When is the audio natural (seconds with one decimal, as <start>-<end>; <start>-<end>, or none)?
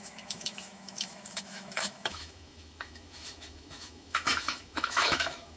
none